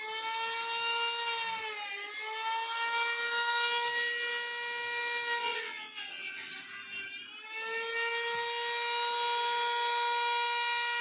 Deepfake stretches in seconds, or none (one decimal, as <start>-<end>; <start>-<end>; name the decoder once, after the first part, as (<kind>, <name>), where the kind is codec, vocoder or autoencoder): 5.4-6.5 (vocoder, WaveNeXt)